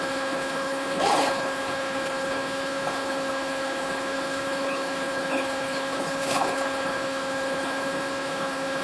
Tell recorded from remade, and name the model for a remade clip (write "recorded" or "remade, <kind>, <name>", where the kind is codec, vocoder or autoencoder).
remade, codec, HILCodec